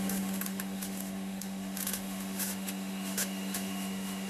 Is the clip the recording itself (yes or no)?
no